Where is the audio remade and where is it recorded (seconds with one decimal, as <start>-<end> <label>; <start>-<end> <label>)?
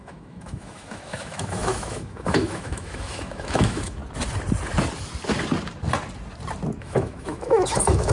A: 0.0-4.0 remade; 4.0-6.8 recorded; 6.8-8.1 remade